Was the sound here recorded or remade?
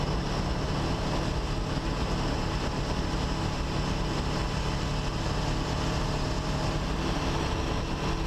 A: recorded